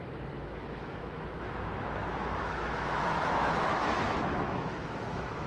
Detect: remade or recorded remade